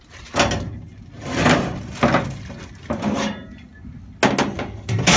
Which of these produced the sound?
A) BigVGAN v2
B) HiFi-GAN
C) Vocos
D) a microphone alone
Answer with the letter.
D